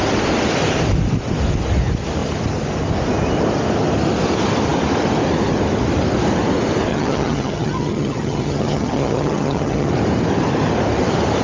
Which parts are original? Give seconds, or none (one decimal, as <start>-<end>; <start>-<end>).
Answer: 0.0-6.9; 9.9-11.4